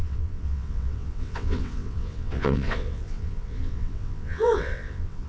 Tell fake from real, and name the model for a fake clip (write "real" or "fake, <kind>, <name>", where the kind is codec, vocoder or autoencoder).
fake, vocoder, WaveNeXt